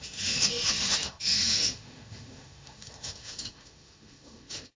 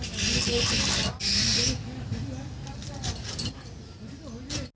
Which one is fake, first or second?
first